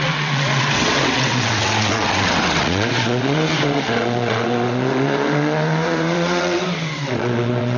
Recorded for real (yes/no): no